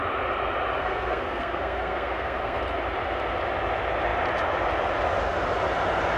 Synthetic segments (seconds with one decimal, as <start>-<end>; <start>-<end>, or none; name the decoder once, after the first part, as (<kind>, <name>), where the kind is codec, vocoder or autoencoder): 0.8-2.6 (codec, SNAC)